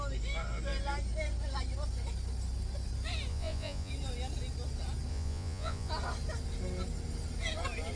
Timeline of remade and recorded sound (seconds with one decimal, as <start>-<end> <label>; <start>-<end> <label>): 0.0-3.3 recorded; 3.3-3.9 remade; 3.9-5.1 recorded; 5.1-5.9 remade; 5.9-8.0 recorded

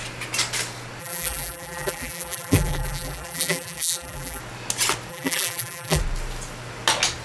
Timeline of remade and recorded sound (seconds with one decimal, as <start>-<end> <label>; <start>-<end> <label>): 0.0-1.0 recorded; 1.0-4.4 remade; 4.4-5.1 recorded; 5.1-6.0 remade; 6.0-7.2 recorded

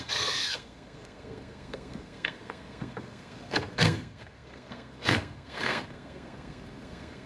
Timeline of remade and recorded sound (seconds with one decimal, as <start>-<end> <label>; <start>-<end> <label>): 0.0-7.3 remade

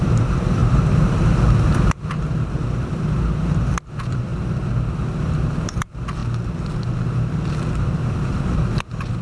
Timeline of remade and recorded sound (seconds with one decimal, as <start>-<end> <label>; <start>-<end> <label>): 0.0-4.3 remade; 4.3-5.4 recorded; 5.4-6.2 remade; 6.2-7.7 recorded; 7.7-9.2 remade